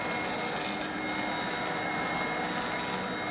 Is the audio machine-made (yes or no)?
no